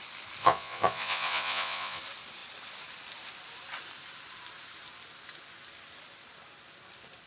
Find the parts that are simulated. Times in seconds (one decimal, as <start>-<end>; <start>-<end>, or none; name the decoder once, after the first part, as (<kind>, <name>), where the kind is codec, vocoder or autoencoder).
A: 0.4-2.0 (vocoder, Vocos)